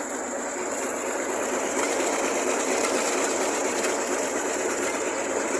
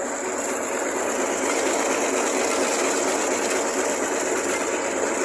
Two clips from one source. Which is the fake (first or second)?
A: first